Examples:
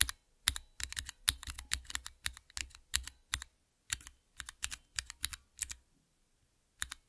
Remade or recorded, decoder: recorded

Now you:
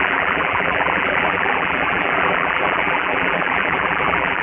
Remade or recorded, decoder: remade, vocoder, BigVGAN v2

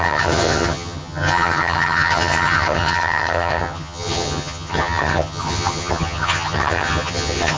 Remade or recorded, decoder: remade, vocoder, HiFi-GAN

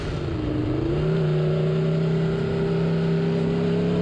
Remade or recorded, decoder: recorded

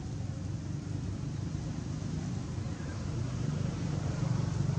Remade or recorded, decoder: recorded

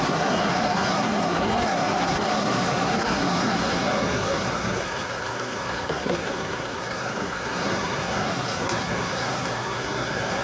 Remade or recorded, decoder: remade, codec, SNAC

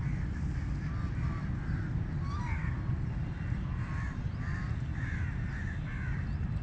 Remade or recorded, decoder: recorded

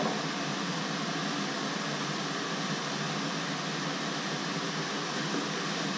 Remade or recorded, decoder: recorded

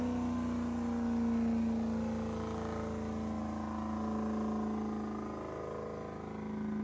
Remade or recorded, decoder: recorded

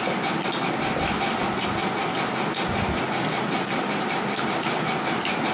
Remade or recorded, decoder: recorded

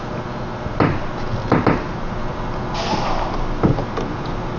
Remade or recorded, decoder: recorded